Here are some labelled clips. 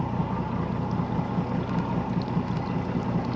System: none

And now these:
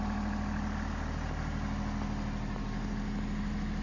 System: none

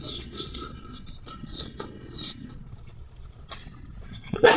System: vocoder, Vocos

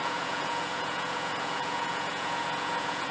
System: vocoder, Vocos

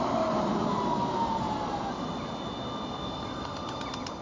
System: none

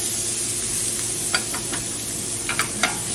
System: none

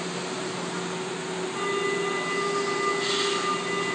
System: none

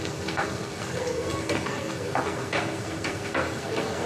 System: codec, SNAC